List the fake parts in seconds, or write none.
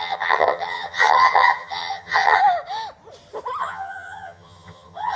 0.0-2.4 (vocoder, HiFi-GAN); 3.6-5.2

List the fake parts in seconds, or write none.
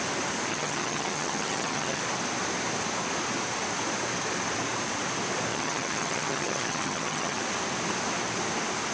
0.5-2.0 (vocoder, HiFi-GAN); 5.5-7.4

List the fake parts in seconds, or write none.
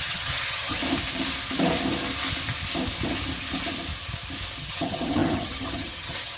0.0-0.8 (vocoder, HiFi-GAN); 4.6-6.4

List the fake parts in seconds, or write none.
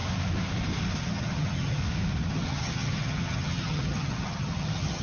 1.1-1.8 (vocoder, HiFi-GAN); 2.3-5.0